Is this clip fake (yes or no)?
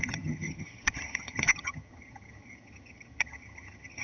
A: yes